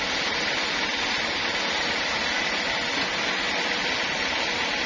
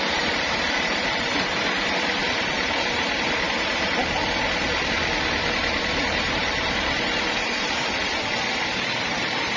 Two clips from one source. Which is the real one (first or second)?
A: first